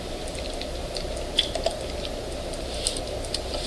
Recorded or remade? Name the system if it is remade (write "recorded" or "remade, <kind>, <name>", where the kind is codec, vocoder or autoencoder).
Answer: recorded